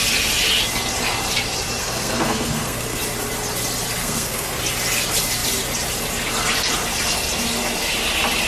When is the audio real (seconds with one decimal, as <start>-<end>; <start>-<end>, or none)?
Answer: 0.0-1.8; 3.0-4.0; 4.6-8.5